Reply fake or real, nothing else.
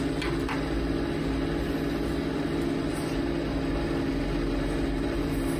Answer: real